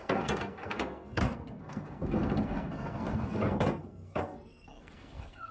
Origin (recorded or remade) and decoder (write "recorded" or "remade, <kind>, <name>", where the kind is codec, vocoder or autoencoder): remade, codec, SNAC